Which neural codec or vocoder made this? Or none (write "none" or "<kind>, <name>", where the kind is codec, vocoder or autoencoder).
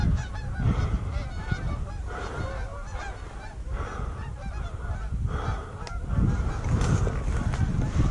none